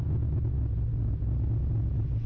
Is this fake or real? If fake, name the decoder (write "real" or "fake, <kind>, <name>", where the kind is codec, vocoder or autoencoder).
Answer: real